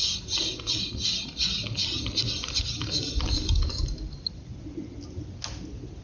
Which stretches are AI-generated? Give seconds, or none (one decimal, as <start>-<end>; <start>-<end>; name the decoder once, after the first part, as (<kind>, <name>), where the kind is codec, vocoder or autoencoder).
none